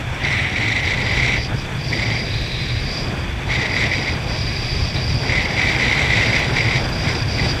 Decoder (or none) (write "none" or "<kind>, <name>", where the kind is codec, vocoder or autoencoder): vocoder, BigVGAN v2